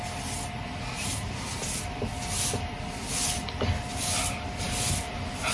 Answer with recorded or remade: recorded